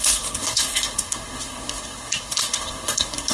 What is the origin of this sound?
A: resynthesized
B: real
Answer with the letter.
A